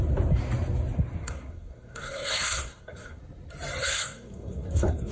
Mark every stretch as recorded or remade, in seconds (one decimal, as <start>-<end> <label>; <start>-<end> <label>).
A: 0.0-1.2 recorded; 1.2-3.2 remade; 3.2-3.8 recorded; 3.8-5.1 remade